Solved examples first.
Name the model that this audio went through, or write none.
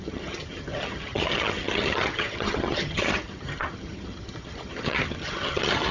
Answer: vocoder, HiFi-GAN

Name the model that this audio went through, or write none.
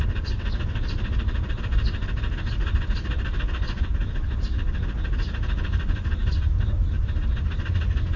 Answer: none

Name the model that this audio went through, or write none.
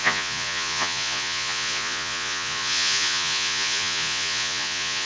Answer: vocoder, Vocos